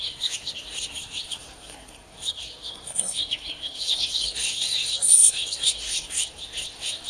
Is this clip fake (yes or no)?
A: yes